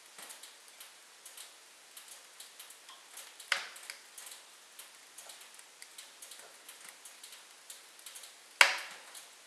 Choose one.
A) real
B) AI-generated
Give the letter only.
A